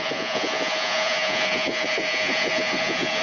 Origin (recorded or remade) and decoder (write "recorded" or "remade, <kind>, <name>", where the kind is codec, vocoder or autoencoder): remade, vocoder, Vocos